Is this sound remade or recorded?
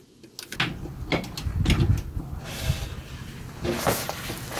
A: recorded